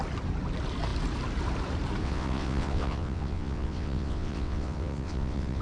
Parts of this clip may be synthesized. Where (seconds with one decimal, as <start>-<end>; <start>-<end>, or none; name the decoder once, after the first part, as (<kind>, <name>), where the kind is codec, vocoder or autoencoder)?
2.0-5.6 (vocoder, WaveNeXt)

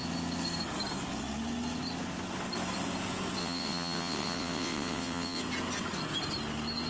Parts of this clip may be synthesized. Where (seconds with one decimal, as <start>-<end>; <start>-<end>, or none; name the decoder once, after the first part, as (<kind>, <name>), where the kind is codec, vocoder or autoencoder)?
3.4-5.4 (vocoder, WaveNeXt)

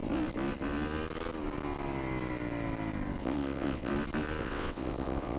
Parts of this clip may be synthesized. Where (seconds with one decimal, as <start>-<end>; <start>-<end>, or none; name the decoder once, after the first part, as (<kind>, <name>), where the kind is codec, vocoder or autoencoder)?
3.2-3.9 (vocoder, WaveNeXt); 4.4-5.4

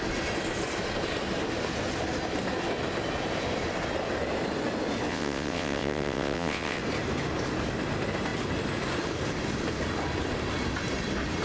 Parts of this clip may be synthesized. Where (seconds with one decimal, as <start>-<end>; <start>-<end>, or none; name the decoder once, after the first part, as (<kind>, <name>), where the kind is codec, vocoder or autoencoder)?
5.1-6.8 (vocoder, WaveNeXt)

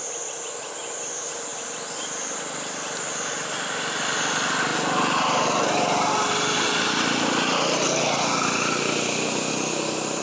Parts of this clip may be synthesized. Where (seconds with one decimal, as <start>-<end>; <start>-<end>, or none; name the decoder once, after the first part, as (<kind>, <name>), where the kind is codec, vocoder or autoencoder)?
none

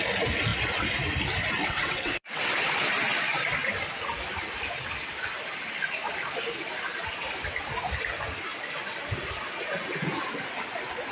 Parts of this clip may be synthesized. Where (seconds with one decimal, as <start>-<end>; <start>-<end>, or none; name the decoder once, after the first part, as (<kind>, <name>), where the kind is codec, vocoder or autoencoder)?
1.6-2.5 (vocoder, WaveNeXt)

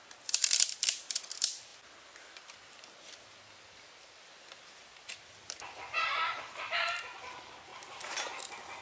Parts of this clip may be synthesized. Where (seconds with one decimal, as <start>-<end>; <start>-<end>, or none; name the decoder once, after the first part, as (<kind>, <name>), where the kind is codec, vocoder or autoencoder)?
none